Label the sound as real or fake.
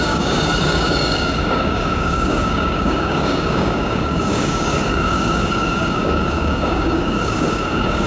fake